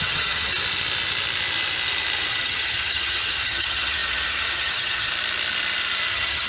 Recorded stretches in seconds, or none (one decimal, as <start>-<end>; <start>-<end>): 0.5-2.3; 5.1-6.1